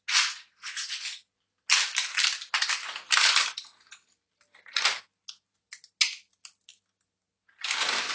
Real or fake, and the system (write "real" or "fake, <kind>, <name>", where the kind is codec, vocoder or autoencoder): real